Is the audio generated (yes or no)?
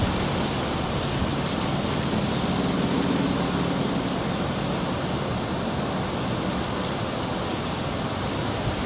no